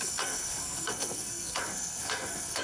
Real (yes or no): no